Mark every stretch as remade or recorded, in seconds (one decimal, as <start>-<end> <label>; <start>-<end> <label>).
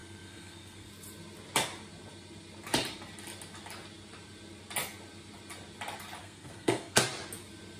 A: 0.0-0.9 remade; 0.9-6.2 recorded; 6.2-7.0 remade; 7.0-7.8 recorded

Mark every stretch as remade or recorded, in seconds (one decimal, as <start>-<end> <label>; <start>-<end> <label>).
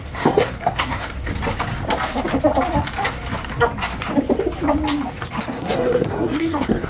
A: 0.0-1.3 remade; 1.3-5.4 recorded; 5.4-6.9 remade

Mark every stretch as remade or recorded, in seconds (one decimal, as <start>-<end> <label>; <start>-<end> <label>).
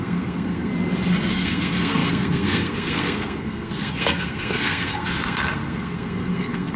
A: 0.0-0.7 remade; 0.7-1.3 recorded; 1.3-6.8 remade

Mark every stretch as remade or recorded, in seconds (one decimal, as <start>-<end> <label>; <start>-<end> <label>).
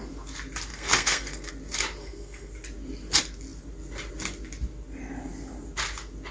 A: 0.0-0.7 recorded; 0.7-1.5 remade; 1.5-2.0 recorded; 2.0-2.5 remade; 2.5-6.3 recorded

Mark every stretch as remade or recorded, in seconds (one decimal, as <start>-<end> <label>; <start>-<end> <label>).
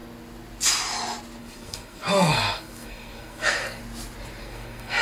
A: 0.0-1.4 recorded; 1.4-3.8 remade; 3.8-4.4 recorded; 4.4-5.0 remade